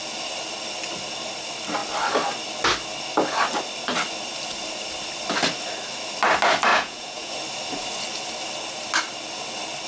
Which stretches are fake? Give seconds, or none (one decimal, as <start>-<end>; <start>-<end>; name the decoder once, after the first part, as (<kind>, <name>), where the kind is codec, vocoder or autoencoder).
6.7-7.3 (vocoder, Vocos)